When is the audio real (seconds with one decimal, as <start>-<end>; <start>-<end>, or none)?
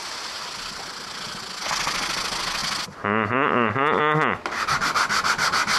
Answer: 0.0-5.8